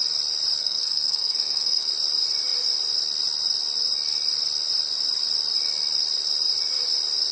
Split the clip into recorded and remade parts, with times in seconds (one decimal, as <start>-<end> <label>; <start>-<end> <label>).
0.0-0.6 recorded; 0.6-1.9 remade; 1.9-7.3 recorded